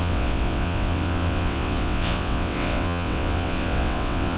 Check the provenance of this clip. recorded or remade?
remade